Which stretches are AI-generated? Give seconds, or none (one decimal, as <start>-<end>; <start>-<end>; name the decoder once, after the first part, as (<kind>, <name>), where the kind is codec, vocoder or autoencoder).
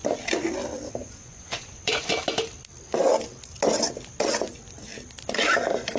1.0-2.1 (vocoder, Vocos)